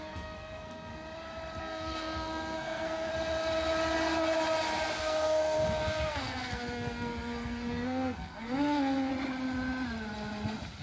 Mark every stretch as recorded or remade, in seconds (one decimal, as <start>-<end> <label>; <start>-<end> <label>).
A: 0.0-0.9 remade; 0.9-1.6 recorded; 1.6-3.1 remade; 3.1-5.0 recorded; 5.0-9.1 remade; 9.1-10.8 recorded